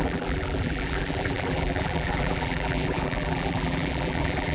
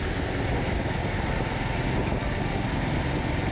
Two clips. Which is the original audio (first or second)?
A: second